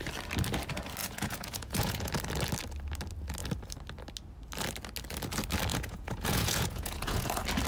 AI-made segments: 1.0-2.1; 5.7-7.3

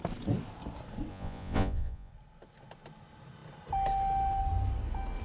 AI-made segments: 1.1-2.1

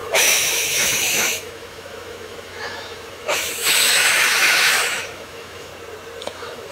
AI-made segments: 0.0-5.7; 6.2-6.7